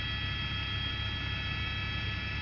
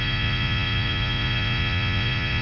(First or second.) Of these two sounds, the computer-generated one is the second